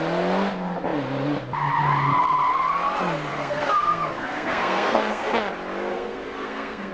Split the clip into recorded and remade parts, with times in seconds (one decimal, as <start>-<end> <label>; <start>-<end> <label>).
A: 0.0-3.3 recorded; 3.3-5.5 remade; 5.5-5.9 recorded; 5.9-6.9 remade